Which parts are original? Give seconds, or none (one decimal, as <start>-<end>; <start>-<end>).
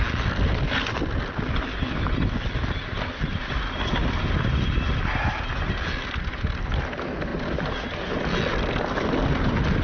0.0-9.8